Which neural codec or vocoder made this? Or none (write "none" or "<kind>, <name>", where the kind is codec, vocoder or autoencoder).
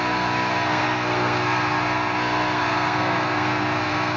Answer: codec, SNAC